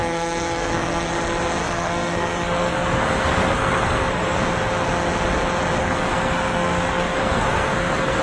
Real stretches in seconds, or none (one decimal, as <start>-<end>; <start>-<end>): 1.1-1.6; 4.4-5.8

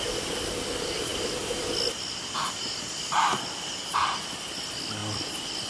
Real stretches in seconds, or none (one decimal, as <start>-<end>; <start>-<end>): 0.0-5.7

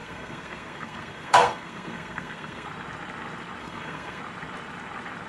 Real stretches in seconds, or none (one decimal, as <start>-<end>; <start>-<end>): 2.7-3.6; 4.2-5.3

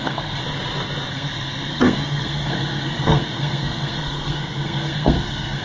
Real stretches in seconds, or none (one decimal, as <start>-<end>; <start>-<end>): 0.4-1.1

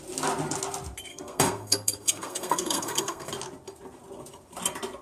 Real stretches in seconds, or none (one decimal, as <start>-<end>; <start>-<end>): 0.0-1.1; 3.3-5.0

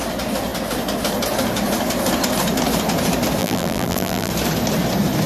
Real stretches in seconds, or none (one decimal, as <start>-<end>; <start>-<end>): 0.0-3.4; 4.3-5.3